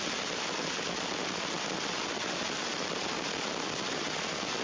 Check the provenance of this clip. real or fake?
real